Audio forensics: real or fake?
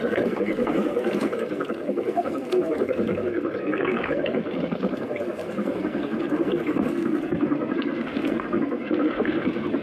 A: fake